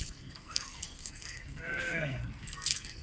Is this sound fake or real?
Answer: fake